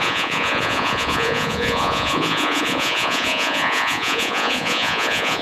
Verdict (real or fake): fake